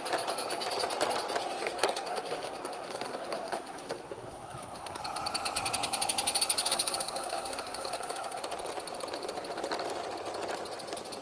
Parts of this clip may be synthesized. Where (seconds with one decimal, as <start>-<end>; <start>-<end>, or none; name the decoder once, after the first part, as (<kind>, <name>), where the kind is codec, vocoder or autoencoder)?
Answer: 1.4-5.0 (codec, SNAC); 6.6-8.4